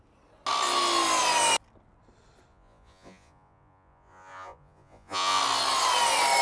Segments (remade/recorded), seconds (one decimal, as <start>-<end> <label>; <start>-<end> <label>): 0.0-2.5 recorded; 2.5-5.4 remade; 5.4-6.4 recorded